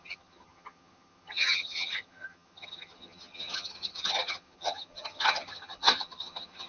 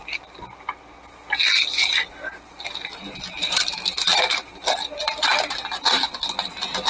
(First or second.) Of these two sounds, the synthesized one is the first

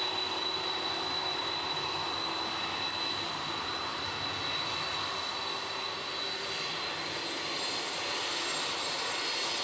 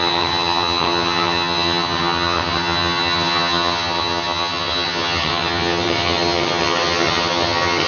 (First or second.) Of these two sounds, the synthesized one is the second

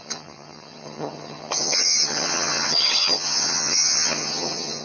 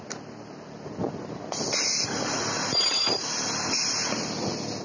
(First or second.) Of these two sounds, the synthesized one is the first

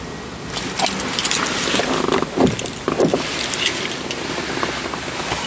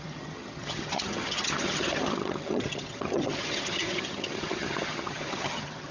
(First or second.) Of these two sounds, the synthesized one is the second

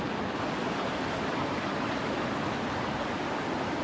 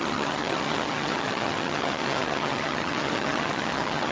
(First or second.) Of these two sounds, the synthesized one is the second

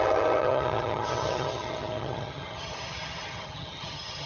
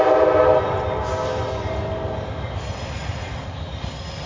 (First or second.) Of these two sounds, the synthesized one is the first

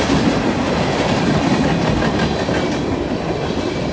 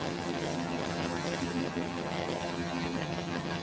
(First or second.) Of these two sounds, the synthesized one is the second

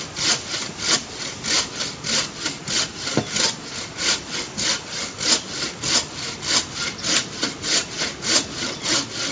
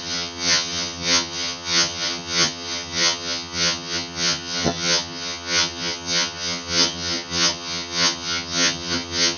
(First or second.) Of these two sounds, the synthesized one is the second